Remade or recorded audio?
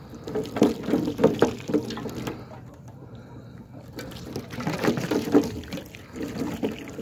remade